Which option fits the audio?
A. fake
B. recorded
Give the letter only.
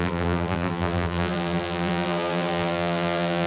A